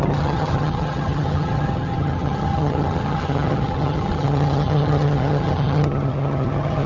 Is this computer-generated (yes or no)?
yes